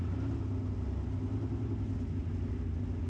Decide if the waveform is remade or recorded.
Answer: recorded